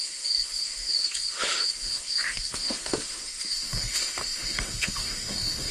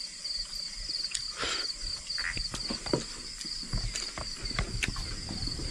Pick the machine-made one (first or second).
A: first